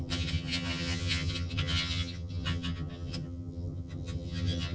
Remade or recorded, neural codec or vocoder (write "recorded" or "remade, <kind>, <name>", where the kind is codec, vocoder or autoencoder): remade, vocoder, HiFi-GAN